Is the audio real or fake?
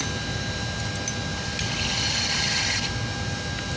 real